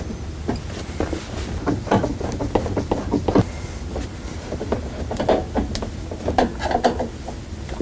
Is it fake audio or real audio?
real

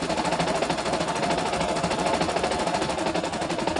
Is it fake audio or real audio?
real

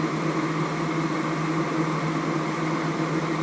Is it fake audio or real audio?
real